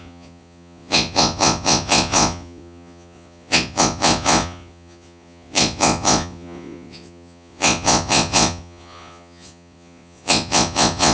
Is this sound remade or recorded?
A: remade